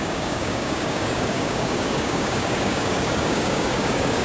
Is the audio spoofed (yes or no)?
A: yes